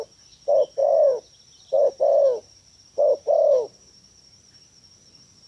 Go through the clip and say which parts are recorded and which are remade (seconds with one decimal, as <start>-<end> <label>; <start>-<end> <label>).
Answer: 0.0-0.8 recorded; 0.8-2.0 remade; 2.0-2.4 recorded; 2.4-4.6 remade; 4.6-5.5 recorded